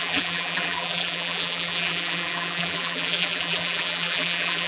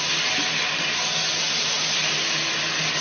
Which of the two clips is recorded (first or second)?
second